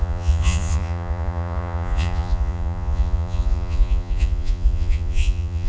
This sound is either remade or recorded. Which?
remade